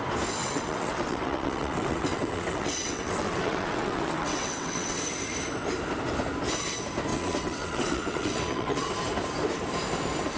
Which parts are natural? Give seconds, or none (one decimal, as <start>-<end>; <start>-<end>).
0.0-0.4; 5.0-7.1; 8.9-10.4